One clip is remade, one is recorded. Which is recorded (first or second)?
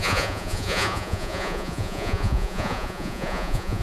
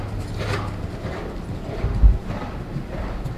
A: second